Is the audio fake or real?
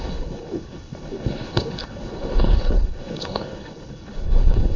fake